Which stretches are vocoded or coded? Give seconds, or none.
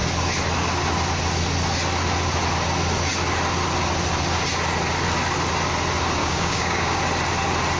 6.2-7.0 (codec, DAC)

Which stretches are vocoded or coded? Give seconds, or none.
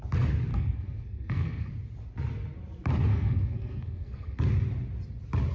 0.5-1.7 (codec, SNAC); 3.1-4.4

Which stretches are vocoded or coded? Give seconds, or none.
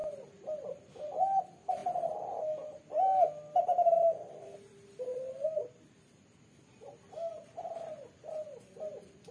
0.0-1.4 (vocoder, BigVGAN v2); 5.1-6.1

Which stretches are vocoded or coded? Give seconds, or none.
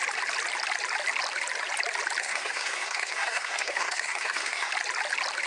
2.2-4.7 (codec, SNAC)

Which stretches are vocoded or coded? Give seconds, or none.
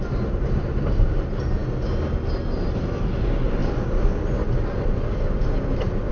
0.0-1.6 (vocoder, BigVGAN v2); 2.7-3.6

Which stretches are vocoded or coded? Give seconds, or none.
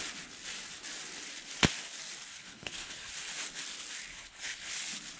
2.3-3.1 (codec, HILCodec); 4.1-4.7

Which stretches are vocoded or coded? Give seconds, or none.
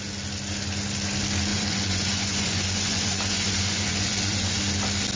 1.5-4.6 (vocoder, Vocos)